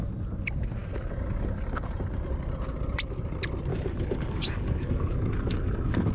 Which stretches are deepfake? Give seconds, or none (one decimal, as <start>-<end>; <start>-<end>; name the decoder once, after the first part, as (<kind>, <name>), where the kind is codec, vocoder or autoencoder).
3.7-6.1 (codec, DAC)